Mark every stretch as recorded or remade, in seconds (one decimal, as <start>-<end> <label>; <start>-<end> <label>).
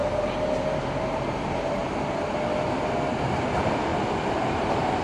0.0-1.0 recorded; 1.0-1.8 remade; 1.8-3.1 recorded; 3.1-3.9 remade; 3.9-4.4 recorded; 4.4-5.0 remade